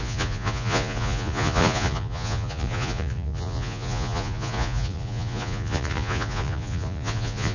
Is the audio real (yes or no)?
no